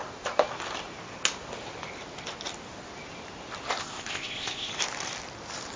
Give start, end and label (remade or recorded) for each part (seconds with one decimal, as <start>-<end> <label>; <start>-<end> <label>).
0.0-3.8 recorded; 3.8-4.7 remade; 4.7-5.8 recorded